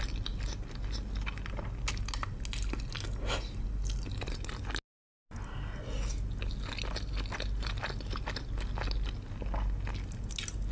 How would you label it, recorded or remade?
recorded